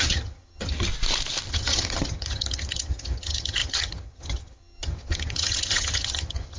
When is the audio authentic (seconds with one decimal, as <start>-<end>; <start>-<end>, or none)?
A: 0.9-1.5